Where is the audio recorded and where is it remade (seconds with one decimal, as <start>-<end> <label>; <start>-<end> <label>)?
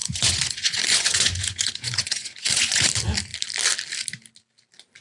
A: 0.0-2.9 remade; 2.9-5.0 recorded